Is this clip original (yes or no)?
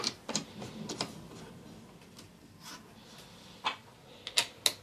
yes